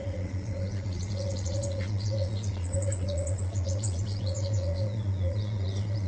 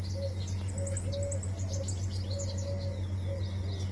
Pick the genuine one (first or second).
second